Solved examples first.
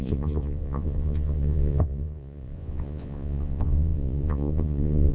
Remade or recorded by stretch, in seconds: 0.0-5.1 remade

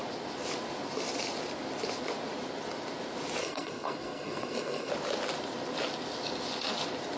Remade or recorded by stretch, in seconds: 0.0-3.4 recorded; 3.4-4.9 remade; 4.9-7.2 recorded

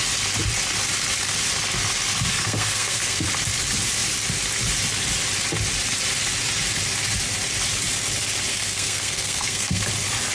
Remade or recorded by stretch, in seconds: 0.0-2.3 recorded; 2.3-3.3 remade; 3.3-8.5 recorded; 8.5-9.8 remade; 9.8-10.3 recorded

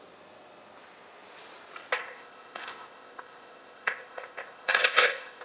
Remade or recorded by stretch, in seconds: 0.0-2.0 recorded; 2.0-5.4 remade

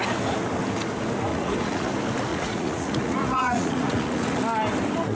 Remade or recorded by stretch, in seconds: 0.0-1.3 recorded; 1.3-1.9 remade; 1.9-2.3 recorded; 2.3-4.4 remade; 4.4-5.1 recorded